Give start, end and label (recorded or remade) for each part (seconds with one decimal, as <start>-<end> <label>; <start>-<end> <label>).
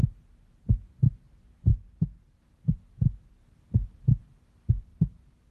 0.0-5.5 recorded